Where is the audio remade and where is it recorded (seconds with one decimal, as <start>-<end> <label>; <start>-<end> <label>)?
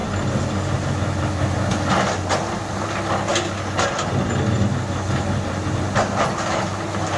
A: 0.0-7.2 recorded